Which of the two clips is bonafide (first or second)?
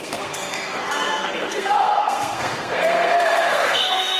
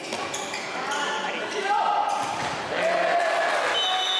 second